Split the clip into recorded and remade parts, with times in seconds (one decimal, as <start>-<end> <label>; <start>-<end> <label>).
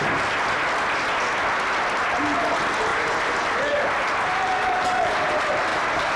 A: 0.0-2.9 recorded; 2.9-3.4 remade; 3.4-4.3 recorded; 4.3-5.1 remade; 5.1-5.7 recorded; 5.7-6.2 remade